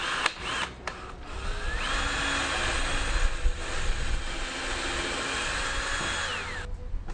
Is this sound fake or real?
real